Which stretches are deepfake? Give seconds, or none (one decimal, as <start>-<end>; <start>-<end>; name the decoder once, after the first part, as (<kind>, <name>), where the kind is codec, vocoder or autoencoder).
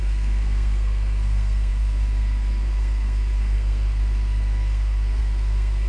0.0-5.9 (codec, SNAC)